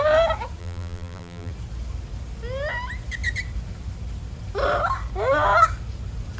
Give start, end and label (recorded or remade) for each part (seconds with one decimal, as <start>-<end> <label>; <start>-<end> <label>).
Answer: 0.0-0.6 recorded; 0.6-1.5 remade; 1.5-6.4 recorded